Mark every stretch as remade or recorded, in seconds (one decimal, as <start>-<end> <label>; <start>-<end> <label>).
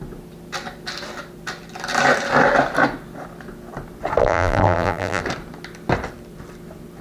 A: 0.0-4.2 recorded; 4.2-5.2 remade; 5.2-7.0 recorded